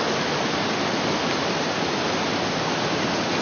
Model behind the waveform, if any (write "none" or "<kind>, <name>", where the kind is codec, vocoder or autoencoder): none